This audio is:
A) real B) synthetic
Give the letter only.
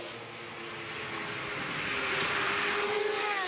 A